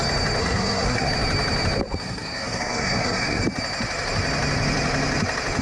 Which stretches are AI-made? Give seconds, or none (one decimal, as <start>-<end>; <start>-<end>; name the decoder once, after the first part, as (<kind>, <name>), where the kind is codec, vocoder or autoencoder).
0.4-1.1 (codec, SNAC); 2.0-3.4